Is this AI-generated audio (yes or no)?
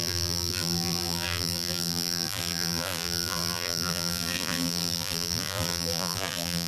yes